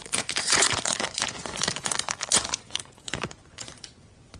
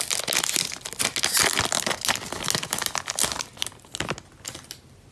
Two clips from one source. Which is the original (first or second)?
second